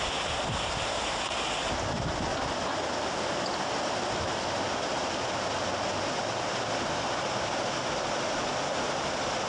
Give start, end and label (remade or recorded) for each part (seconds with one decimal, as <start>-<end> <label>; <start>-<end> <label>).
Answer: 0.0-9.5 recorded